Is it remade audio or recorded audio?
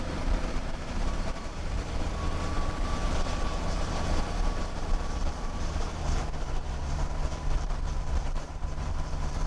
remade